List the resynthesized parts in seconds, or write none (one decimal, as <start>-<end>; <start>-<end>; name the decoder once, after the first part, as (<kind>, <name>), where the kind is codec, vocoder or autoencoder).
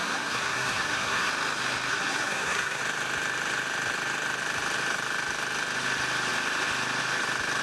0.0-1.3 (codec, SNAC); 1.9-2.8